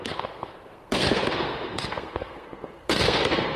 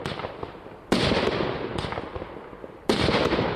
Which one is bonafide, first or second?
second